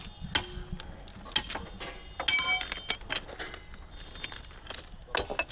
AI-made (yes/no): no